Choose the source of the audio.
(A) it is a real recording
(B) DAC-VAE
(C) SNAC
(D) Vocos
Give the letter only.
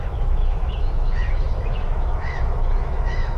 B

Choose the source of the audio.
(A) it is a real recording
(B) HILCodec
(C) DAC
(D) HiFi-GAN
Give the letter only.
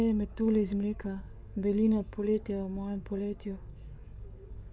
C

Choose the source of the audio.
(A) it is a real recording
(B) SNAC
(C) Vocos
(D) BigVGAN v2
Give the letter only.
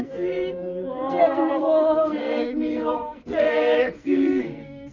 B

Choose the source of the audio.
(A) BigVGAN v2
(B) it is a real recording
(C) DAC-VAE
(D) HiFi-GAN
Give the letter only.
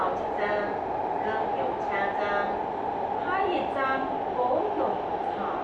B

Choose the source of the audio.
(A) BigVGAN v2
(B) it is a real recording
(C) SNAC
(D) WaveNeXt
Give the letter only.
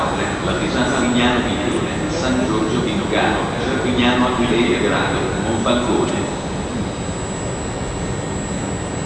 B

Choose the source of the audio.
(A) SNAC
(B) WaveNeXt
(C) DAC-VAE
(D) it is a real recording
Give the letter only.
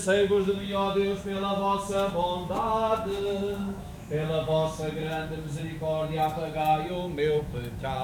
C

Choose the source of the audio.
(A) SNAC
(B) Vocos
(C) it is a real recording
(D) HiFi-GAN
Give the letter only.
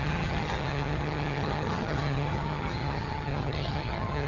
D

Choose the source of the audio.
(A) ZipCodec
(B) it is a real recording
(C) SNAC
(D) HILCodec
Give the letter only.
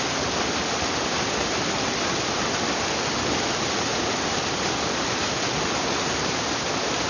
B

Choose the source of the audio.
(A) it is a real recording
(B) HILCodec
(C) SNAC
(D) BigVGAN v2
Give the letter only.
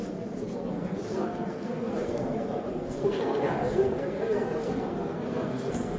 C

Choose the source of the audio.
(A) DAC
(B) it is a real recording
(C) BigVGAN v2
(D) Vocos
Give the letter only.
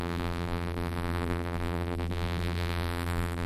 C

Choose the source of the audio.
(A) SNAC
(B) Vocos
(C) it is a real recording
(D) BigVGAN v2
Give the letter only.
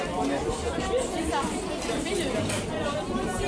C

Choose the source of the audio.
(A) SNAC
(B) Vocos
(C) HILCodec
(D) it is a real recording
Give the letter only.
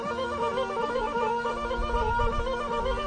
D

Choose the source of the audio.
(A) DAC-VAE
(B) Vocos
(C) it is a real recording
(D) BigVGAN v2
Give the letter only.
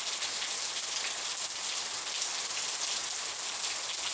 C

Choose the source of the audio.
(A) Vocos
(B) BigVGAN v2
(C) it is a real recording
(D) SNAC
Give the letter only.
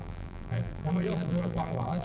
B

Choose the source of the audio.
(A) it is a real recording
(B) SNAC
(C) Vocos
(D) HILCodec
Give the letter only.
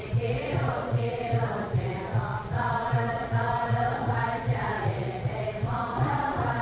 C